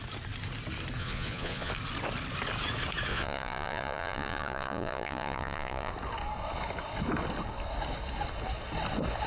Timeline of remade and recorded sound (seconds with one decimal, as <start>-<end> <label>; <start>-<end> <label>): 0.0-1.0 recorded; 1.0-1.7 remade; 1.7-3.1 recorded; 3.1-5.9 remade; 5.9-9.3 recorded